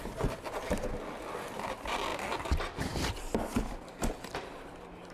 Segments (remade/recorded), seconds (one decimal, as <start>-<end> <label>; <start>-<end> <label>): 0.0-5.1 recorded